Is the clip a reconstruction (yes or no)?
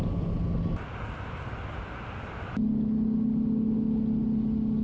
no